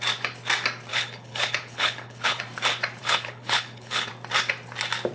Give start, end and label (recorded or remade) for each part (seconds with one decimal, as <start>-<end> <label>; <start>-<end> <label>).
0.0-0.9 recorded; 0.9-2.4 remade; 2.4-3.0 recorded; 3.0-4.1 remade; 4.1-5.1 recorded

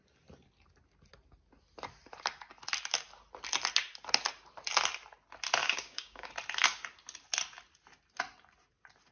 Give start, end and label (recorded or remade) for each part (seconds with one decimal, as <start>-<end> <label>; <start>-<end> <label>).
0.0-5.6 recorded; 5.6-6.3 remade; 6.3-9.1 recorded

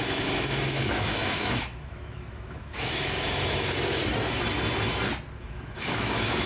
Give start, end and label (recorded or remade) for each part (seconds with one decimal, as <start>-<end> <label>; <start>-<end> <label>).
0.0-4.0 remade; 4.0-5.4 recorded; 5.4-6.5 remade

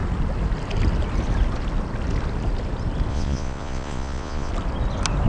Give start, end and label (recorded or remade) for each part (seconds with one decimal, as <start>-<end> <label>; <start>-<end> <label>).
0.0-3.1 recorded; 3.1-4.5 remade; 4.5-5.3 recorded

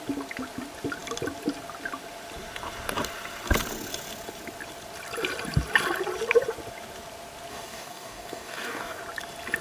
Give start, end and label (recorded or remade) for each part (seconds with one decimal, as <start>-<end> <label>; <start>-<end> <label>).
0.0-7.5 recorded; 7.5-9.0 remade; 9.0-9.6 recorded